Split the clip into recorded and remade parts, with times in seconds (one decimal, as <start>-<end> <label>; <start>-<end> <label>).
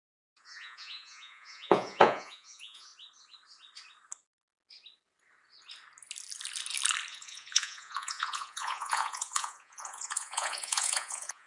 0.0-2.9 remade; 2.9-7.1 recorded; 7.1-11.5 remade